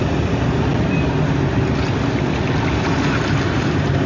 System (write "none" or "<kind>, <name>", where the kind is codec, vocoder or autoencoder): none